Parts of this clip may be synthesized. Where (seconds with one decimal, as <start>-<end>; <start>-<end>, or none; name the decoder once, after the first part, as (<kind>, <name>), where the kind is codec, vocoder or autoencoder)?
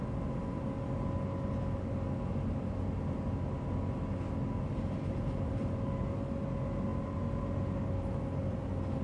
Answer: none